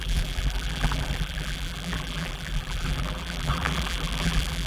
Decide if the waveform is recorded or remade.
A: remade